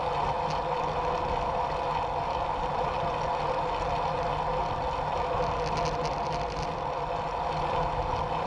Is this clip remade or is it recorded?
recorded